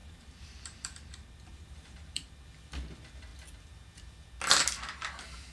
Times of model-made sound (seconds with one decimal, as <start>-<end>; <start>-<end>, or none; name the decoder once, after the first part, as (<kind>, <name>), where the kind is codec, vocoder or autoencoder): 0.0-2.4 (vocoder, BigVGAN v2)